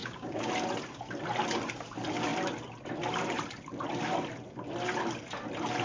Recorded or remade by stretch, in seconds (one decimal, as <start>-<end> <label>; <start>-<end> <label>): 0.0-0.5 remade; 0.5-5.8 recorded